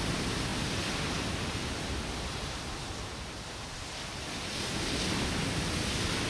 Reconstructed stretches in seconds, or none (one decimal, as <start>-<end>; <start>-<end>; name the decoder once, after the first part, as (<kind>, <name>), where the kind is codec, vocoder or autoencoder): none